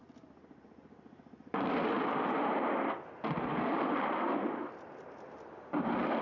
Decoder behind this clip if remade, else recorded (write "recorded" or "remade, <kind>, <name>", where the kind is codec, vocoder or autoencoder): remade, vocoder, BigVGAN v2